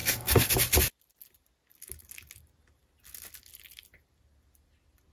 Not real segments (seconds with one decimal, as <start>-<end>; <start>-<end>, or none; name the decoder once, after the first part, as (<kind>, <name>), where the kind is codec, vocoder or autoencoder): 0.0-0.5 (codec, SNAC)